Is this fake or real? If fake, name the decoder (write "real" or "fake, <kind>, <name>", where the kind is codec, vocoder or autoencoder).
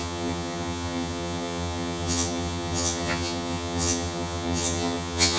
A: fake, vocoder, HiFi-GAN